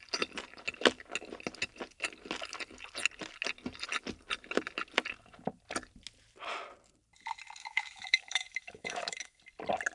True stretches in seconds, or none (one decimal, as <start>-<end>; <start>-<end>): 0.0-7.6; 9.4-9.9